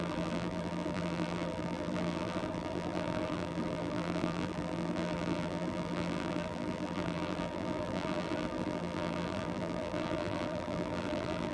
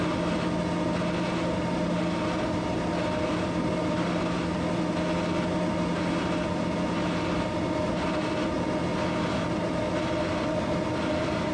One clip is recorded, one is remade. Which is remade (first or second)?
first